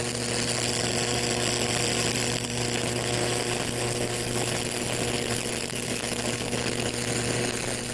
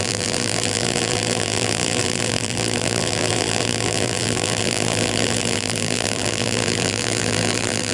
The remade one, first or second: second